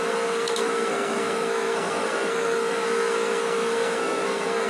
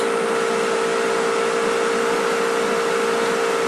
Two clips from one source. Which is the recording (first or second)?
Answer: second